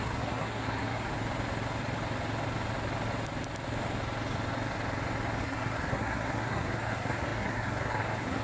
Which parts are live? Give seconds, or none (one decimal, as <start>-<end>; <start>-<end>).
1.1-5.4